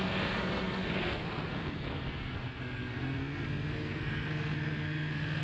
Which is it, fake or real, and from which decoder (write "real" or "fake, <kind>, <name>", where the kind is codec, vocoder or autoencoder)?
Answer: fake, codec, SNAC